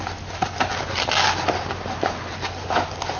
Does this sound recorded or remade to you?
recorded